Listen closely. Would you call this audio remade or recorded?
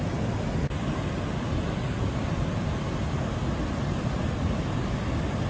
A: recorded